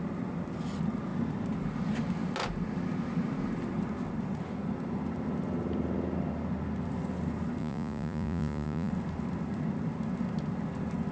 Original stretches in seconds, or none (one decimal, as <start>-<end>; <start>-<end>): 0.0-7.6; 8.9-11.1